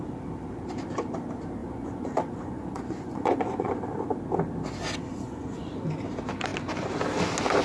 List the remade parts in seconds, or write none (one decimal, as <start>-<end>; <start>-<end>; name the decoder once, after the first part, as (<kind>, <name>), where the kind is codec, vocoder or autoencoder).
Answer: 1.6-3.7 (vocoder, Vocos); 5.1-5.7